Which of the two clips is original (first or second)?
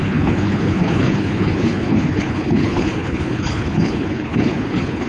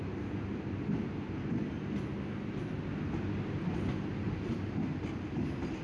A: second